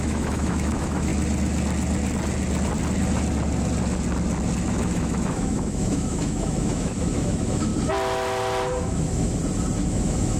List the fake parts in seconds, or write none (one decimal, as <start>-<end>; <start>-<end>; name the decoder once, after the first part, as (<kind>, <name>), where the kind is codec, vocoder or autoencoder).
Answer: 0.0-1.1 (autoencoder, DAC-VAE); 4.7-7.7; 8.8-9.4; 9.9-10.4